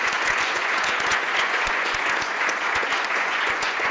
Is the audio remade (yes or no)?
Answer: yes